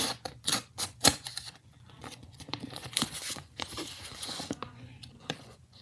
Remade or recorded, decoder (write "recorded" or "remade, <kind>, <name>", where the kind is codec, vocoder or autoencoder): remade, vocoder, Vocos